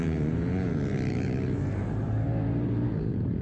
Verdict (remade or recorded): remade